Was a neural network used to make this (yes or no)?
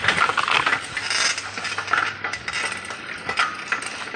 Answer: no